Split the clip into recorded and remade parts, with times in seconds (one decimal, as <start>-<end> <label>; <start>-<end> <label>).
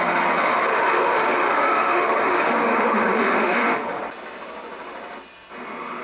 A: 0.0-0.4 recorded; 0.4-4.0 remade; 4.0-6.0 recorded